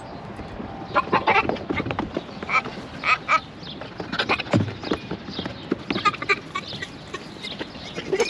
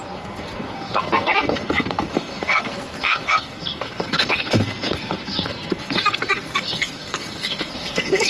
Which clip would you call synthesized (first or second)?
second